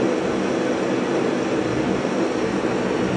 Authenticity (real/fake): real